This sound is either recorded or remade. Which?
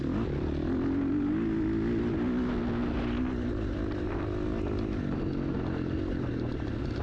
recorded